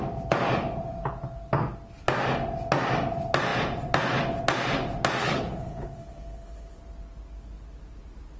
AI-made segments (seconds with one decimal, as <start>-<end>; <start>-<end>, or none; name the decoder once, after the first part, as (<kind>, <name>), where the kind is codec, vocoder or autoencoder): 5.2-6.8 (codec, HILCodec)